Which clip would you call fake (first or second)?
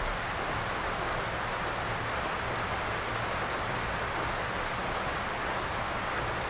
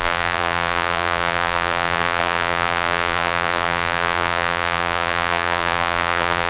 second